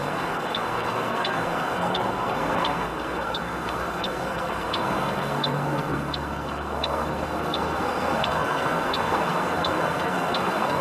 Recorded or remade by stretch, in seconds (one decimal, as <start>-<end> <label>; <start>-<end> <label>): 0.0-10.8 remade